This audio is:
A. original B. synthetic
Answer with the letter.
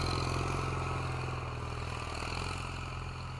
A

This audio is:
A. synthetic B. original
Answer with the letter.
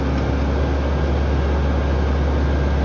B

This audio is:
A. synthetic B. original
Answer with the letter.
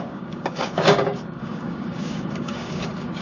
A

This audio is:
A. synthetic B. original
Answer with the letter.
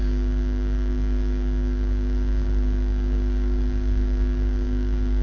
A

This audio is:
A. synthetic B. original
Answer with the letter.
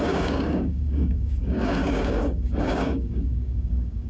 A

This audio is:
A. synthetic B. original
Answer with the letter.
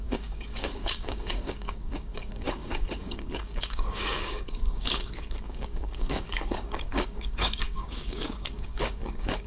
A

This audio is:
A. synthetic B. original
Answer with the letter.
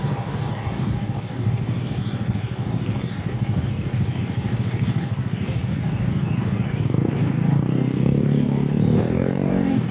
A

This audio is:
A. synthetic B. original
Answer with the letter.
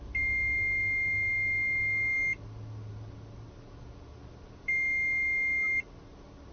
B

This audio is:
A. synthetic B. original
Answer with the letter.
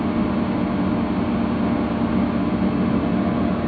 B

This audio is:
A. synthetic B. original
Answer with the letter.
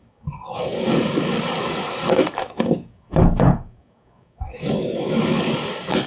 A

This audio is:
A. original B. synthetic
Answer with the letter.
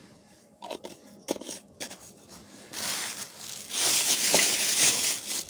B